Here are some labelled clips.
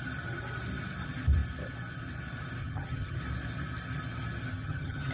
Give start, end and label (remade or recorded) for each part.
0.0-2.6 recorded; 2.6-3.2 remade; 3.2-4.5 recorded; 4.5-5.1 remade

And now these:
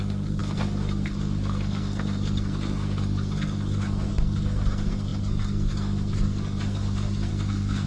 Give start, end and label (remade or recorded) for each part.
0.0-7.9 remade

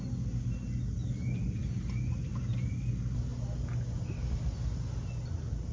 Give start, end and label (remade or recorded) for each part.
0.0-5.7 recorded

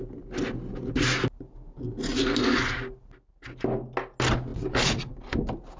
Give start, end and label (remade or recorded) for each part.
0.0-5.8 recorded

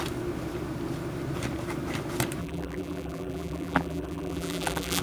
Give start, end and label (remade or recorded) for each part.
0.0-2.4 recorded; 2.4-5.0 remade

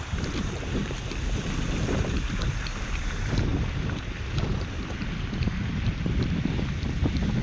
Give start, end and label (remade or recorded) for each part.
0.0-3.5 remade; 3.5-7.4 recorded